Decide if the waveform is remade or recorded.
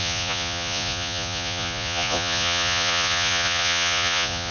remade